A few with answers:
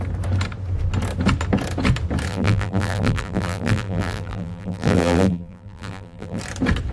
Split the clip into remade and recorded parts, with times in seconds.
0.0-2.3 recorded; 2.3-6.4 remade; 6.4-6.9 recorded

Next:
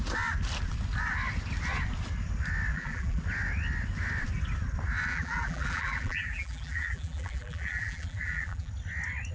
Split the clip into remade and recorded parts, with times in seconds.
0.0-2.7 recorded; 2.7-3.2 remade; 3.2-5.1 recorded; 5.1-8.7 remade; 8.7-9.3 recorded

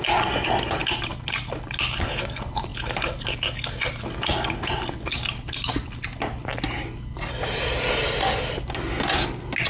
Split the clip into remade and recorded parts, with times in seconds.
0.0-9.7 recorded

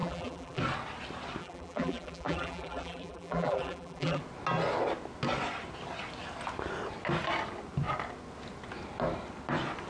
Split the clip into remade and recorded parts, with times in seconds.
0.0-0.6 remade; 0.6-1.4 recorded; 1.4-4.2 remade; 4.2-9.9 recorded

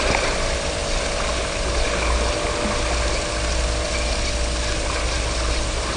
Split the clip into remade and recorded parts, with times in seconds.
0.0-6.0 recorded

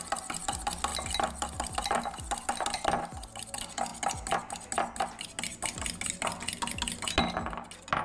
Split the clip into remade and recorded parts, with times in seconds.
0.0-8.0 recorded

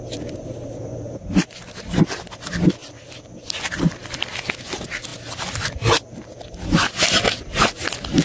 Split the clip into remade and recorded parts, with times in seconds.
0.0-8.2 recorded